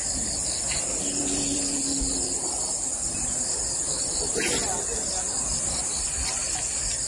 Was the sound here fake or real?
real